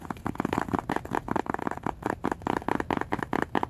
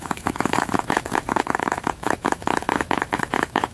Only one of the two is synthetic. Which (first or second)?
second